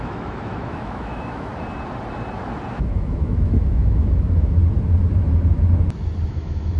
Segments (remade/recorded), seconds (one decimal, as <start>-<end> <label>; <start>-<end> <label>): 0.0-1.5 remade; 1.5-2.7 recorded; 2.7-4.6 remade; 4.6-6.3 recorded; 6.3-6.8 remade